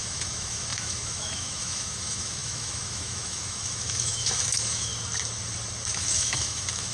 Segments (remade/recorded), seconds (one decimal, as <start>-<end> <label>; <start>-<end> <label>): 0.0-4.9 remade; 4.9-5.9 recorded; 5.9-6.9 remade